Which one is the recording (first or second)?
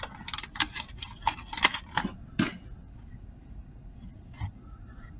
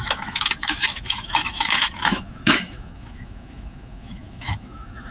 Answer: first